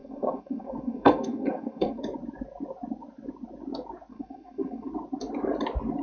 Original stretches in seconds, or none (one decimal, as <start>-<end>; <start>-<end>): 2.0-4.1; 4.9-6.0